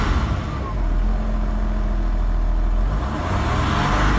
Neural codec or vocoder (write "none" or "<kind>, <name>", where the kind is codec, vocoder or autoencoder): none